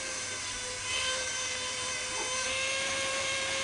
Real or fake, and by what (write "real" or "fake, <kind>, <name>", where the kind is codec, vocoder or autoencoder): fake, vocoder, BigVGAN v2